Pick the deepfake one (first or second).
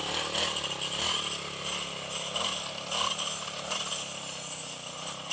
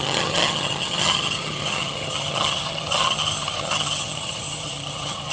second